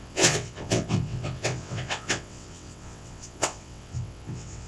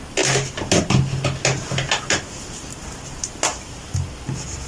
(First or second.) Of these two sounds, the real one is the second